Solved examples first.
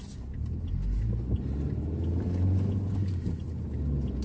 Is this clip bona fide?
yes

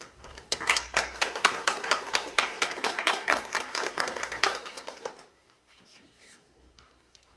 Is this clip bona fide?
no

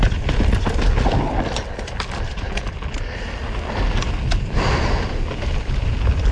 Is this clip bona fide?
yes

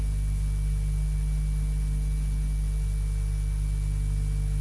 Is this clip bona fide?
yes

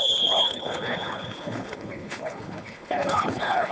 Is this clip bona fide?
no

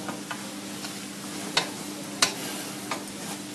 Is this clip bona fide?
yes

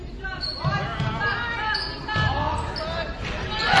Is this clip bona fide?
yes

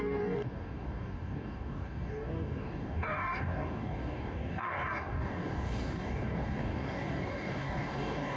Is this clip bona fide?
no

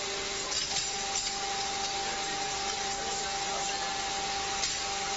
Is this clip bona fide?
yes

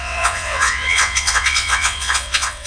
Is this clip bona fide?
no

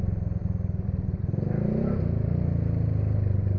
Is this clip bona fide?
yes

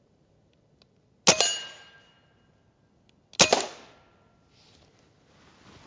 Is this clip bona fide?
yes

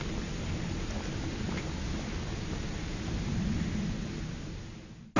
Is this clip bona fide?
yes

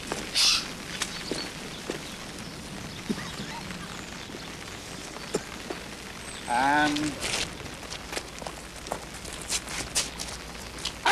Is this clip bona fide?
yes